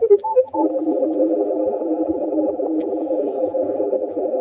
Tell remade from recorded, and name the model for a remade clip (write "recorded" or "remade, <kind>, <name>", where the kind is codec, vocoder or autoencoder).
remade, vocoder, BigVGAN v2